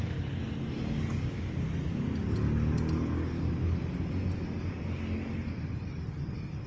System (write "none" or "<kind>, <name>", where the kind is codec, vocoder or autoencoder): none